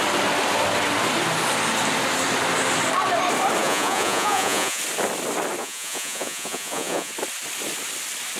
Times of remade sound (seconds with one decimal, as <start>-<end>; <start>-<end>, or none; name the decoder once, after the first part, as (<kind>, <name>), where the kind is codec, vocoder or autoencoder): 3.6-4.8 (vocoder, Vocos); 5.6-7.1